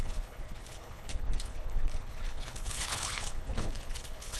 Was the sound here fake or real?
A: fake